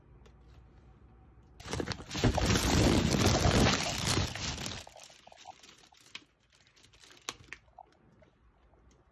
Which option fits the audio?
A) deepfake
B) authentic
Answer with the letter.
B